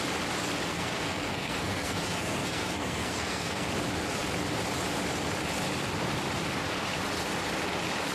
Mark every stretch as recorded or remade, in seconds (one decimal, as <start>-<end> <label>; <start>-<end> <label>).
0.0-0.7 recorded; 0.7-3.7 remade; 3.7-8.1 recorded